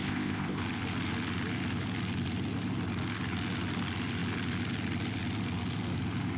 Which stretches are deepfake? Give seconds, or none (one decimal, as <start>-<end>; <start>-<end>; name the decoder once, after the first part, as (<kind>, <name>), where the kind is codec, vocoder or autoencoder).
0.0-0.6 (codec, ZipCodec)